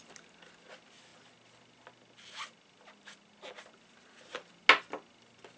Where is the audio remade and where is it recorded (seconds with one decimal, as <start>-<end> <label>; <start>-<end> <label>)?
0.0-5.6 recorded